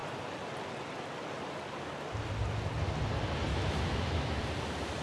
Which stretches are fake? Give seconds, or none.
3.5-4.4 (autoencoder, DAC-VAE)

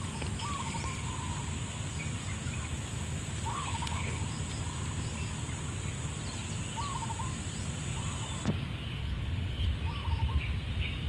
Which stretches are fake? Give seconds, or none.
3.5-4.2 (codec, HILCodec); 9.0-9.7

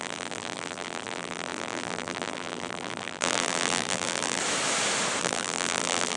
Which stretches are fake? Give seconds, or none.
0.0-4.4 (vocoder, BigVGAN v2); 5.2-6.2